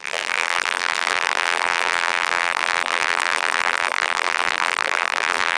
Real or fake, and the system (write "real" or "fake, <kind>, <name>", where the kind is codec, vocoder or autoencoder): fake, vocoder, BigVGAN v2